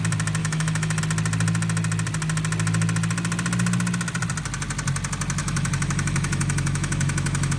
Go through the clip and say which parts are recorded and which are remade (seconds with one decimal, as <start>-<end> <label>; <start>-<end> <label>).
0.0-0.4 recorded; 0.4-1.0 remade; 1.0-5.4 recorded; 5.4-7.6 remade